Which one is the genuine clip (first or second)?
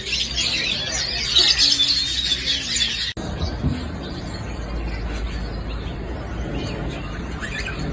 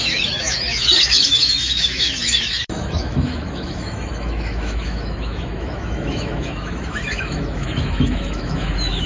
first